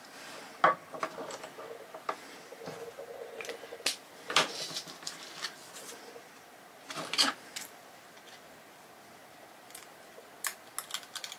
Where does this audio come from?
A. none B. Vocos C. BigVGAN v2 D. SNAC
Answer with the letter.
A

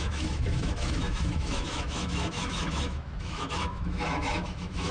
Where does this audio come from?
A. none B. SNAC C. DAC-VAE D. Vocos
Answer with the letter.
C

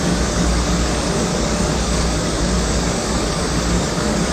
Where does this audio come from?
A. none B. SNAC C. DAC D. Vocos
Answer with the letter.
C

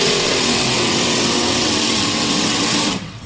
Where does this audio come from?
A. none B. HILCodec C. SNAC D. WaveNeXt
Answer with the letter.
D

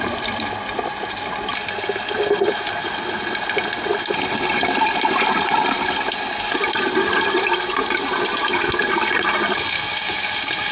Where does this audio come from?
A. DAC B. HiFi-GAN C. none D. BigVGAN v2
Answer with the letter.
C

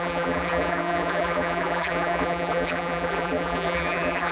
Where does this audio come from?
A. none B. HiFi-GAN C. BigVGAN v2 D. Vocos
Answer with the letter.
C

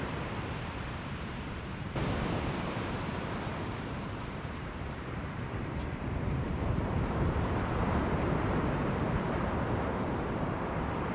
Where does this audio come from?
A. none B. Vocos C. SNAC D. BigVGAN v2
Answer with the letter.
D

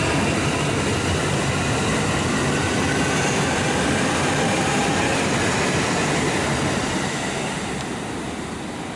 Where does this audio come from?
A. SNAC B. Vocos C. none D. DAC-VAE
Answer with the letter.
C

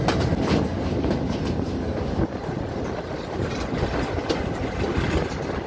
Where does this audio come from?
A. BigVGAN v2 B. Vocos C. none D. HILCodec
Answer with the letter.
C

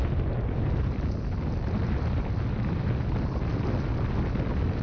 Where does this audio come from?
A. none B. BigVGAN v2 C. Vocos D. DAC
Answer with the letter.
A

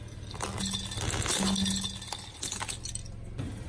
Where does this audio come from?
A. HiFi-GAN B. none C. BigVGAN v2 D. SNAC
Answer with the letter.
B